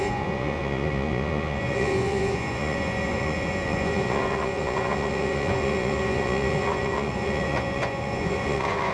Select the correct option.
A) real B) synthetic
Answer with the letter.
B